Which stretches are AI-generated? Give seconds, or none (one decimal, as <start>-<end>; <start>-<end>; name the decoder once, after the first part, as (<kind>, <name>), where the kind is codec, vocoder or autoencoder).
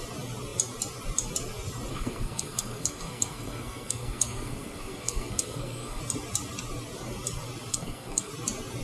1.9-6.0 (codec, SNAC); 7.7-8.3